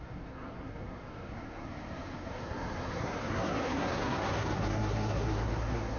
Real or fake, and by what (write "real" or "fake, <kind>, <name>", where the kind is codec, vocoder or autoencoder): fake, codec, SNAC